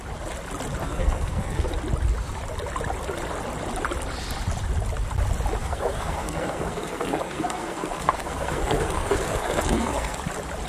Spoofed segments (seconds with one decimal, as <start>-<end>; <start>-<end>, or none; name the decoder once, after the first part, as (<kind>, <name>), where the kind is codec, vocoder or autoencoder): 0.8-1.7 (codec, SNAC); 5.6-10.2